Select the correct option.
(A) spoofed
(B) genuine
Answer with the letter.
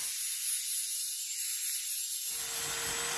B